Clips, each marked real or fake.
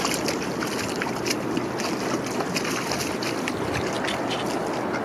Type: real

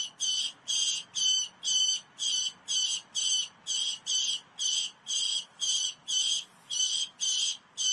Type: real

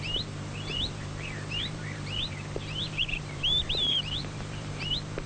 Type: fake